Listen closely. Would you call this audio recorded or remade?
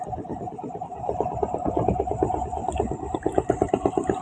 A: recorded